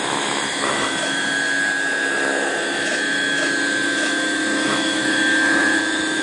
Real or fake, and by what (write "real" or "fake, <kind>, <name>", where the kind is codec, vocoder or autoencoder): fake, autoencoder, DAC-VAE